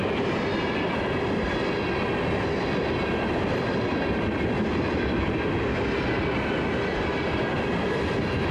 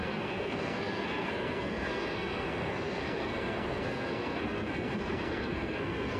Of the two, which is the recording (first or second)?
first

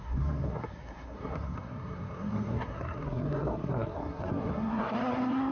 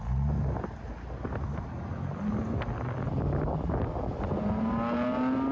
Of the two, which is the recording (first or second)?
second